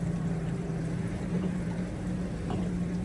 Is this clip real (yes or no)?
no